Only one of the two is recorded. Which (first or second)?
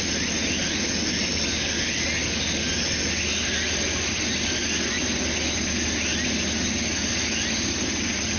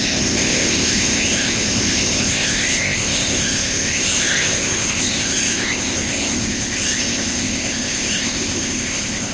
first